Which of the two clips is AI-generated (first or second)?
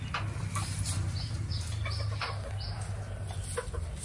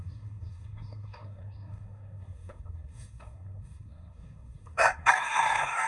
second